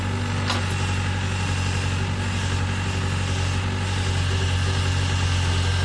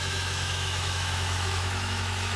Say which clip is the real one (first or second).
first